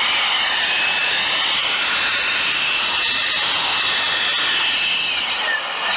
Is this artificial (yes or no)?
no